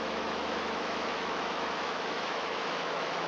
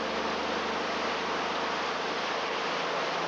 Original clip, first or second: second